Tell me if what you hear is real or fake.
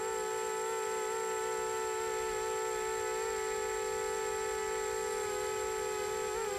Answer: real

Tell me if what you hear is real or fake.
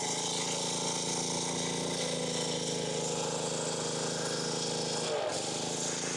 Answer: real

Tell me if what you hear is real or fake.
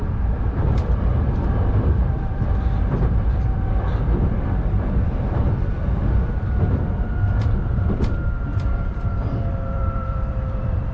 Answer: fake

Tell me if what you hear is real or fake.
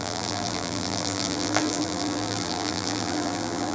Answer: fake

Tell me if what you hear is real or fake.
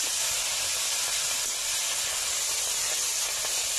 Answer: real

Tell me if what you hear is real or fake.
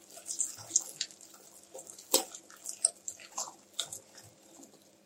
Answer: real